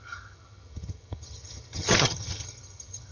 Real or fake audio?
fake